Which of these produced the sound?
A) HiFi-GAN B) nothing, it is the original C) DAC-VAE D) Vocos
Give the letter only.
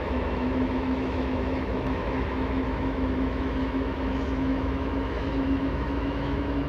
C